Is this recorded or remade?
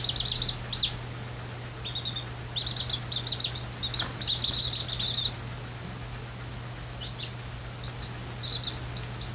recorded